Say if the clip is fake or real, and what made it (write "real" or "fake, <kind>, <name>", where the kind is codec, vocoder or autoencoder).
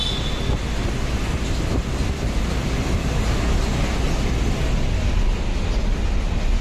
real